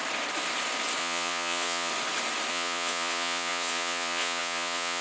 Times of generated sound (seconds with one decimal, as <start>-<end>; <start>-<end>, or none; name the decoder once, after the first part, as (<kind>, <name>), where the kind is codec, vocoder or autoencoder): 1.0-1.9 (vocoder, Vocos); 2.5-5.0